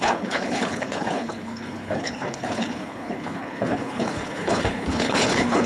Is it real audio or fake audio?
fake